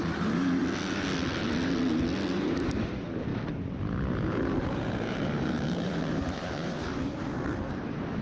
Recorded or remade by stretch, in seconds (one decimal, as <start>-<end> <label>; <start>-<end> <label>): 0.0-0.6 remade; 0.6-2.8 recorded; 2.8-3.3 remade; 3.3-4.4 recorded; 4.4-8.2 remade